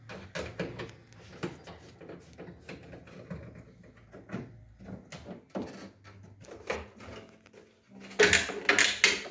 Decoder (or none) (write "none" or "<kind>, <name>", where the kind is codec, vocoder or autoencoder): none